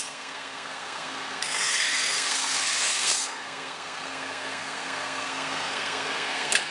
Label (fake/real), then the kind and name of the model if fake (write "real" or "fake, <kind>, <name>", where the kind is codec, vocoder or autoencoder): fake, codec, SNAC